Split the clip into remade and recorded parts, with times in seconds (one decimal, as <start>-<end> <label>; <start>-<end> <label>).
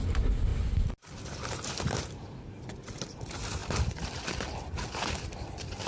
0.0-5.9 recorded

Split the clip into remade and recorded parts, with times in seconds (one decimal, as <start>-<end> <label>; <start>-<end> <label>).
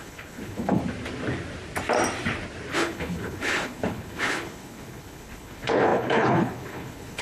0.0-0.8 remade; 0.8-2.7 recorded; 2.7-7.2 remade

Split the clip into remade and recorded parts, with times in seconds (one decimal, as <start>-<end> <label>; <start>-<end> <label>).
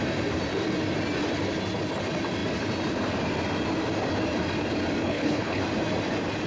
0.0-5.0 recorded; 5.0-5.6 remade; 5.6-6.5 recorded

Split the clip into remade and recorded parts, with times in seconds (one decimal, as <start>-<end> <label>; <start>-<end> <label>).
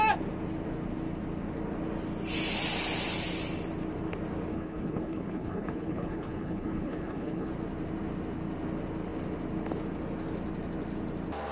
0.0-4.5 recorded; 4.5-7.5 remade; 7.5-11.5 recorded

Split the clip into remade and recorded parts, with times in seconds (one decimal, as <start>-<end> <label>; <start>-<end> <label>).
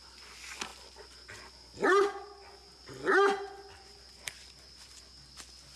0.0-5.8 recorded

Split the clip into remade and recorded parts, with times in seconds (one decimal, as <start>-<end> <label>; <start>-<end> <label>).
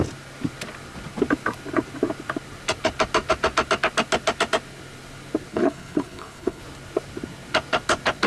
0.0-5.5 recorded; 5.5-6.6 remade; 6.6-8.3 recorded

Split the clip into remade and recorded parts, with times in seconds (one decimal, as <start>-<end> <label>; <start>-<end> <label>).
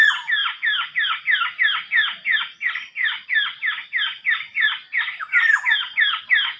0.0-6.6 recorded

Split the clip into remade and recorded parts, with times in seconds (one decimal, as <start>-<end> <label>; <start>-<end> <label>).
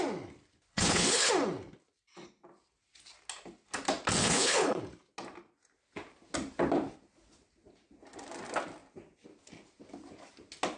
0.0-0.7 recorded; 0.7-1.3 remade; 1.3-4.2 recorded; 4.2-4.8 remade; 4.8-10.8 recorded